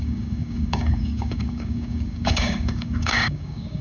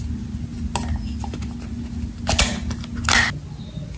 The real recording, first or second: second